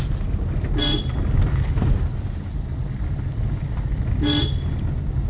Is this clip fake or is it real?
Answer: real